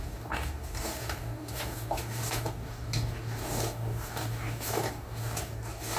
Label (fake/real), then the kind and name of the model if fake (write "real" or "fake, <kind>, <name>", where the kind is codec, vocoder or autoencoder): fake, codec, DAC